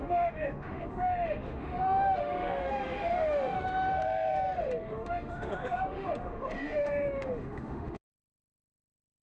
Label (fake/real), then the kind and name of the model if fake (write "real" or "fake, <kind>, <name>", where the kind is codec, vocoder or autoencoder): fake, autoencoder, DAC-VAE